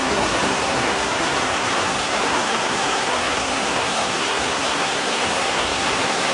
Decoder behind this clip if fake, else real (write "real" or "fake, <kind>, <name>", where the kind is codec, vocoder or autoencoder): fake, codec, SNAC